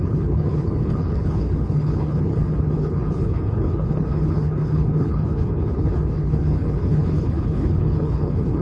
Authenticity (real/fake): fake